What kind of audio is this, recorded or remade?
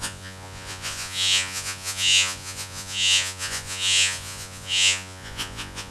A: remade